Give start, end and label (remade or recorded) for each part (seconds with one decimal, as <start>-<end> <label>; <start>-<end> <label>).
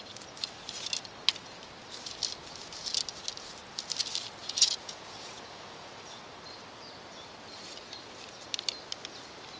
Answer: 0.0-4.4 recorded; 4.4-6.2 remade; 6.2-9.6 recorded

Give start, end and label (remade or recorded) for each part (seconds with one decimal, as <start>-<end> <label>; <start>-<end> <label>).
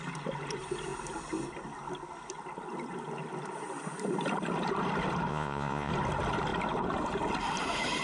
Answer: 0.0-5.3 recorded; 5.3-5.9 remade; 5.9-8.0 recorded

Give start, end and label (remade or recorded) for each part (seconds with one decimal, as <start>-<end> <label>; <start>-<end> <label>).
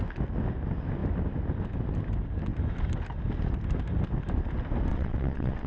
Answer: 0.0-4.9 recorded; 4.9-5.7 remade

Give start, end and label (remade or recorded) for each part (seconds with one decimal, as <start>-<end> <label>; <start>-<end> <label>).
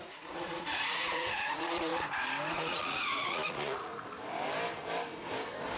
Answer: 0.0-1.9 remade; 1.9-2.5 recorded; 2.5-3.9 remade; 3.9-5.8 recorded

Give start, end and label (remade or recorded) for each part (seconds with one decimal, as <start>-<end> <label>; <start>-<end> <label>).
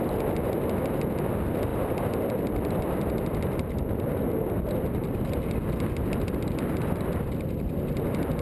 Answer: 0.0-8.4 recorded